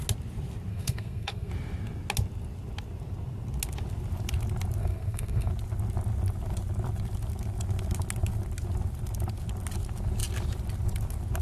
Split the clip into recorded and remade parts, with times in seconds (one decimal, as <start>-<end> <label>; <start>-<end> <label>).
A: 0.0-0.7 recorded; 0.7-1.5 remade; 1.5-4.8 recorded; 4.8-5.5 remade; 5.5-11.4 recorded